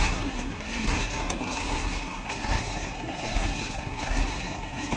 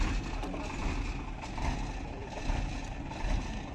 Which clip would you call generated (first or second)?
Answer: first